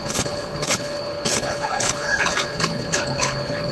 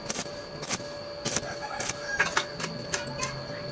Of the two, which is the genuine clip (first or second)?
second